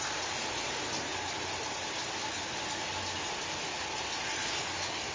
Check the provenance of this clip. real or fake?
real